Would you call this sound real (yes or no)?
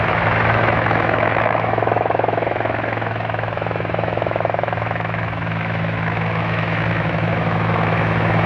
no